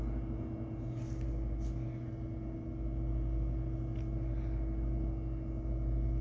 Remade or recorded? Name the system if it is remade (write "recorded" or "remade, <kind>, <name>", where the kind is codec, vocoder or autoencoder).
recorded